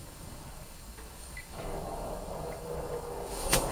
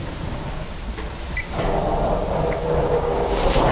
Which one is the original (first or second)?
second